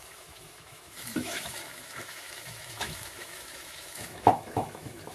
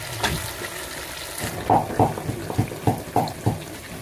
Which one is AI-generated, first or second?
first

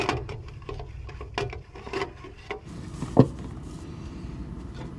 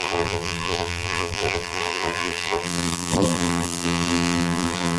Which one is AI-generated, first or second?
second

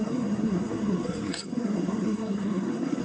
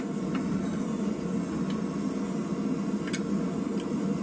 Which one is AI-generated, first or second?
first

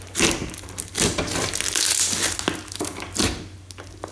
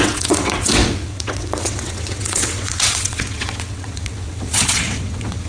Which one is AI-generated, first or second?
second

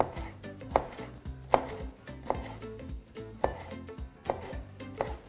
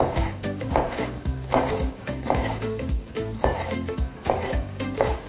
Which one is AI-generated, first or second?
second